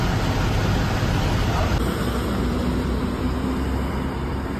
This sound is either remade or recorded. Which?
recorded